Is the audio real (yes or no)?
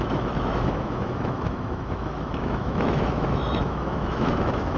no